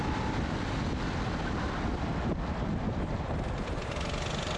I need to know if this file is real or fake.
real